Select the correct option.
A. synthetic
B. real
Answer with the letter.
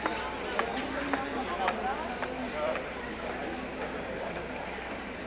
B